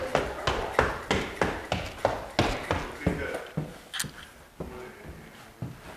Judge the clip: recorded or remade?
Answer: recorded